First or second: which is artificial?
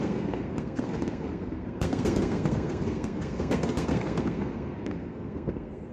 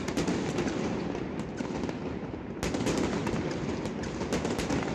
first